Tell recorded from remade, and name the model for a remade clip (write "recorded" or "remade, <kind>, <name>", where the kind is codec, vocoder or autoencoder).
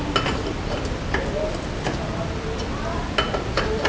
recorded